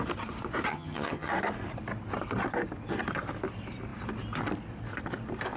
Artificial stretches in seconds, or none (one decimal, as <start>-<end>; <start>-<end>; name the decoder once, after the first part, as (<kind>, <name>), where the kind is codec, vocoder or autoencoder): 0.7-1.3 (vocoder, HiFi-GAN)